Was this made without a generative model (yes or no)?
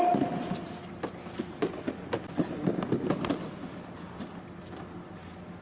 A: yes